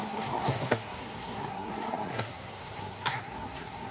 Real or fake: fake